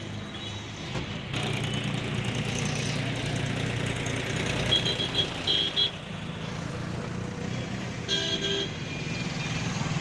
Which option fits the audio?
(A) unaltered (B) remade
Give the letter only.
A